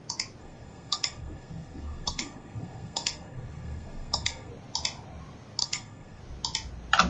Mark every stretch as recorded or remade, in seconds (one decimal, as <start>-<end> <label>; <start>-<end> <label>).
0.0-0.4 recorded; 0.4-4.5 remade; 4.5-5.6 recorded; 5.6-6.2 remade; 6.2-7.1 recorded